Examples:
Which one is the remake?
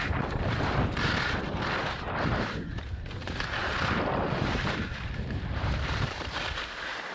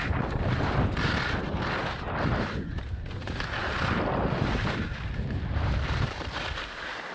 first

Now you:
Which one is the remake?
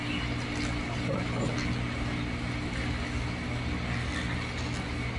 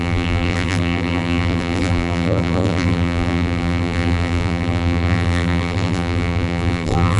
second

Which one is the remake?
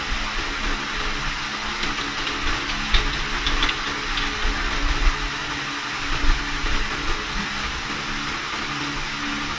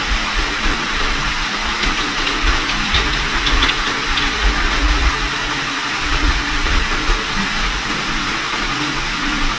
second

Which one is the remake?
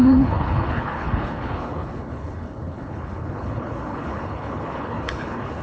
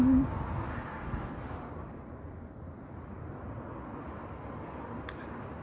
first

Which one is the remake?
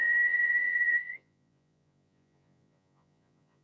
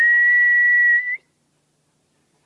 first